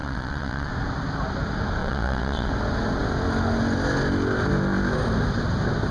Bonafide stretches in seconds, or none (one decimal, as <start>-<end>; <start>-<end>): 0.7-1.8; 2.5-5.9